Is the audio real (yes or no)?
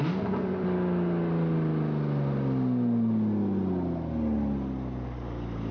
yes